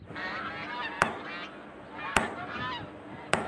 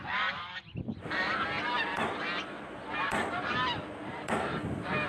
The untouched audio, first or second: first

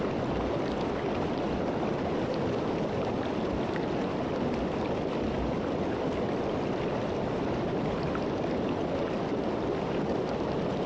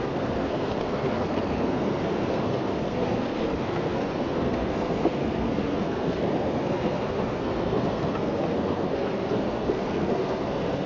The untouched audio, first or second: first